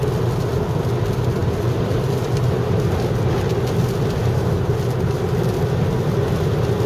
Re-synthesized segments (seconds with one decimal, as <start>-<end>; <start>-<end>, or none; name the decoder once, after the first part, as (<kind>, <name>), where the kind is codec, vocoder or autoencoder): none

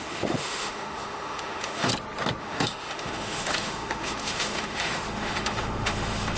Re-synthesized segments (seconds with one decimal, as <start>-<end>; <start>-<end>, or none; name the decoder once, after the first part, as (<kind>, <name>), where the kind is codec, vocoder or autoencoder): 0.0-1.9 (autoencoder, DAC-VAE); 2.4-6.4

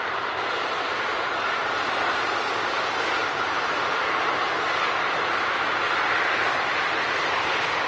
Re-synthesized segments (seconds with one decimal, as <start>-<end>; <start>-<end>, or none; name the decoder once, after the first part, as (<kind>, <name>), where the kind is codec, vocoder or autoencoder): none

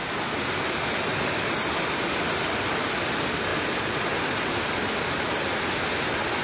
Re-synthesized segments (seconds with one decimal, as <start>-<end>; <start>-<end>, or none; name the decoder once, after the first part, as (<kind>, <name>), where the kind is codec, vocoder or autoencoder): none